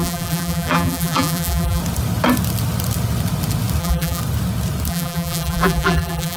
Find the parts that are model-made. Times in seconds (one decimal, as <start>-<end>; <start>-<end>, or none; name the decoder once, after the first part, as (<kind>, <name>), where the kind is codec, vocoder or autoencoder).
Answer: 0.0-1.8 (vocoder, BigVGAN v2); 3.8-4.2; 4.9-6.4